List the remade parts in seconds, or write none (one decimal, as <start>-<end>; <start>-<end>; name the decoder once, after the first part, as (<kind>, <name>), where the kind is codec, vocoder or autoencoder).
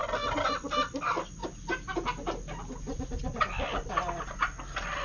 none